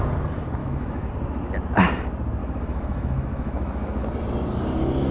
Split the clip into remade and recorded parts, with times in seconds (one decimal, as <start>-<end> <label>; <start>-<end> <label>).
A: 0.0-0.6 recorded; 0.6-1.1 remade; 1.1-2.4 recorded; 2.4-4.0 remade; 4.0-5.1 recorded